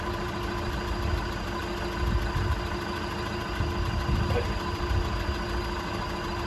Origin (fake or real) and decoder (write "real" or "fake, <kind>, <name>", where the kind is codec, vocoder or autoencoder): real